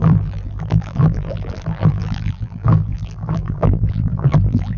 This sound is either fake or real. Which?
fake